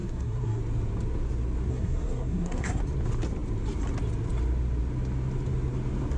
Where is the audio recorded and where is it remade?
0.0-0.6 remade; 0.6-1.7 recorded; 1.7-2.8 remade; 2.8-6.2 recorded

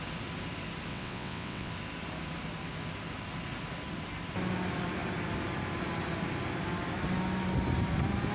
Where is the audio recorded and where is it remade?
0.0-0.9 recorded; 0.9-1.7 remade; 1.7-8.3 recorded